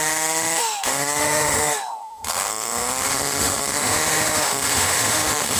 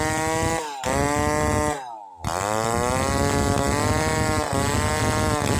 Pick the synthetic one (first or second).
first